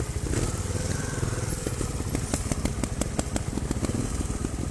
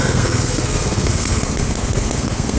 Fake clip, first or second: second